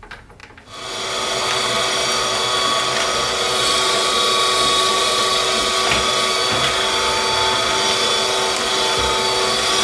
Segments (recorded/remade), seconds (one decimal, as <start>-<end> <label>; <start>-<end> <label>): 0.0-9.8 recorded